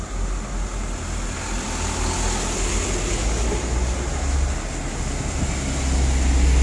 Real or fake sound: real